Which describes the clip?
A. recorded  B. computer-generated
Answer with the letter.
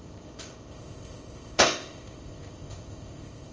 B